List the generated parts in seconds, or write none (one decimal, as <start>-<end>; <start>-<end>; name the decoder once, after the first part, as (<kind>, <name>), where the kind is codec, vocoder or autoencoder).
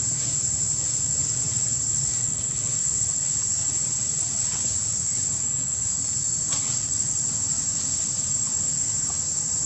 1.2-3.1 (vocoder, WaveNeXt); 3.6-4.6; 6.5-7.0